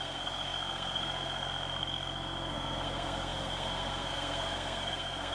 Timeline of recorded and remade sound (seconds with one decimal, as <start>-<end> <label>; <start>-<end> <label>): 0.0-5.3 remade